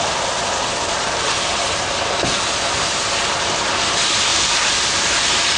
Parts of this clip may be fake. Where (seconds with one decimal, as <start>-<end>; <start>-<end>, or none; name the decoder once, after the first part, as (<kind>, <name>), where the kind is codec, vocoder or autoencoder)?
0.0-5.6 (vocoder, BigVGAN v2)